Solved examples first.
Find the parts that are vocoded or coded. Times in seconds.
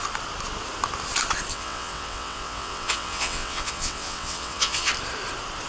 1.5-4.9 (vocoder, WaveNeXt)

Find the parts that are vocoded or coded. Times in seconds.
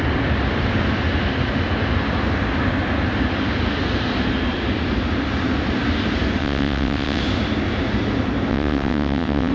6.4-7.2 (vocoder, WaveNeXt); 8.5-9.5